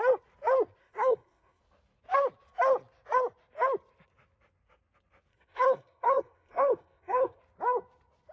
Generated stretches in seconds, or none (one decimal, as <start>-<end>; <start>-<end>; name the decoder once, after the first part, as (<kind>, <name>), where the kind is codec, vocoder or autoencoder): 0.8-1.6 (codec, SNAC); 5.3-7.4